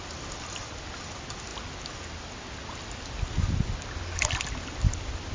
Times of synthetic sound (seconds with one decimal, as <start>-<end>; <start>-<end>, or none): none